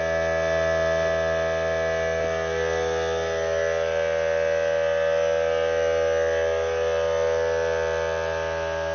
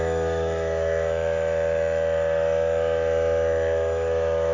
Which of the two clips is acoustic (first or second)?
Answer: first